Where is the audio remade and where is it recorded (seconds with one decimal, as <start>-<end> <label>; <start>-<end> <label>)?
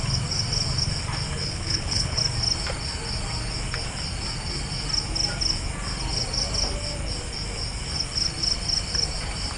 0.0-1.4 recorded; 1.4-2.2 remade; 2.2-9.6 recorded